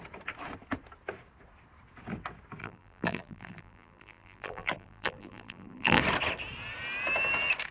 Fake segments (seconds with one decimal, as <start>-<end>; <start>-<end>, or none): 2.6-6.0